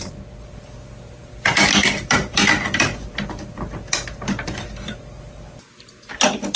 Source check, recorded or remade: recorded